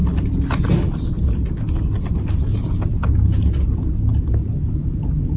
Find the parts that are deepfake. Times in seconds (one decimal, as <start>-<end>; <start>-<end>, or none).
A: none